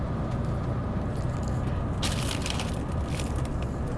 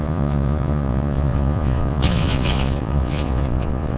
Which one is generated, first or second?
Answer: second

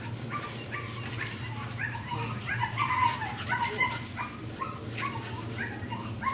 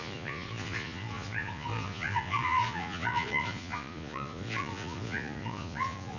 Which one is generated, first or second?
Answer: second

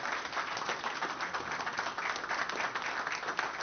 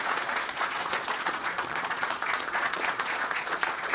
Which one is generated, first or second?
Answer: second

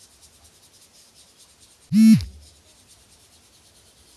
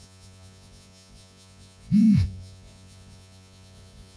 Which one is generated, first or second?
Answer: second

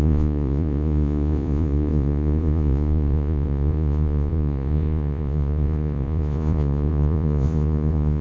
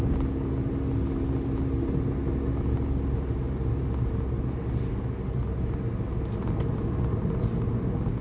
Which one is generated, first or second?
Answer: first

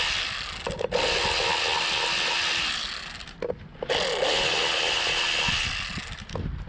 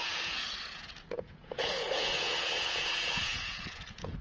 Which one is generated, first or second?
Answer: second